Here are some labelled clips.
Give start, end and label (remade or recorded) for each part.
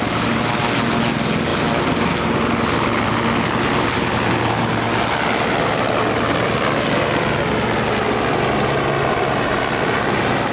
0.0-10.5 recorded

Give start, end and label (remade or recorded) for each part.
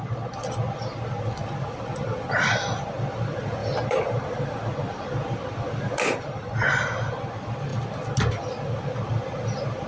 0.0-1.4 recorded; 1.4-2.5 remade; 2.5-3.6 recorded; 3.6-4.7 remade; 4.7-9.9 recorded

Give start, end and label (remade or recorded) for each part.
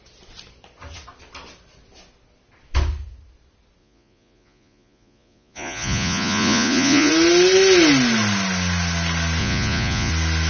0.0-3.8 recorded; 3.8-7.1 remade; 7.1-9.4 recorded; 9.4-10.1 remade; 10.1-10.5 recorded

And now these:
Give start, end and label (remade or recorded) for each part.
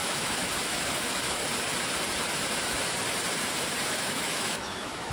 0.0-1.4 remade; 1.4-4.0 recorded; 4.0-5.1 remade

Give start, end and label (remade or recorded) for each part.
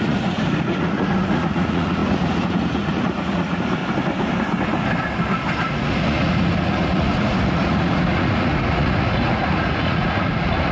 0.0-3.8 remade; 3.8-5.7 recorded; 5.7-10.7 remade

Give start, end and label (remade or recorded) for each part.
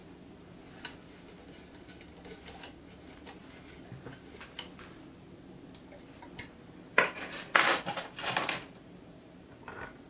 0.0-3.0 recorded; 3.0-3.4 remade; 3.4-6.9 recorded; 6.9-10.1 remade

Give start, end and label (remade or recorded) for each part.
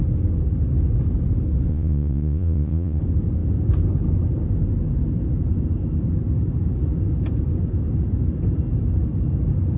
0.0-1.7 recorded; 1.7-3.0 remade; 3.0-9.8 recorded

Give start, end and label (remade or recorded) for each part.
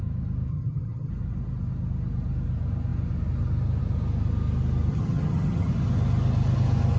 0.0-0.5 recorded; 0.5-1.1 remade; 1.1-4.9 recorded; 4.9-5.7 remade; 5.7-7.0 recorded